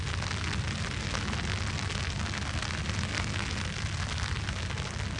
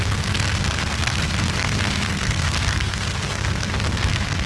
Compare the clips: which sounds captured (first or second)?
first